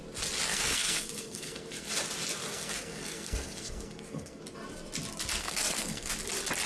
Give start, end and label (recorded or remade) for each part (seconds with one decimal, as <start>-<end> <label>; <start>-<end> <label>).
0.0-0.5 recorded; 0.5-1.9 remade; 1.9-2.4 recorded; 2.4-4.4 remade; 4.4-5.4 recorded; 5.4-6.1 remade; 6.1-6.7 recorded